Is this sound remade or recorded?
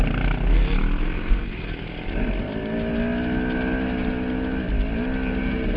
recorded